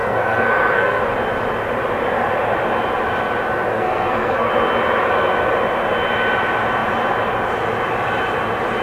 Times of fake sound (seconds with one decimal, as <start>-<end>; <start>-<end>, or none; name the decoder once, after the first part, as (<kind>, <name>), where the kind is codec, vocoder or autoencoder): 0.0-1.0 (codec, SNAC); 3.7-4.5